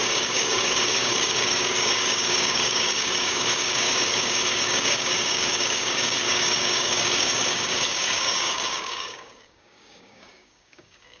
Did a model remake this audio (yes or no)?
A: yes